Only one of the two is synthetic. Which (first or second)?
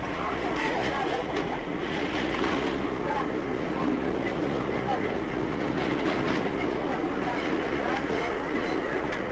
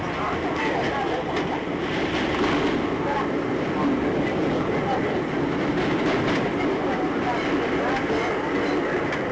first